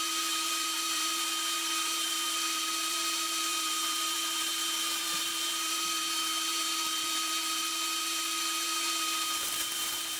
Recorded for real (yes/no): no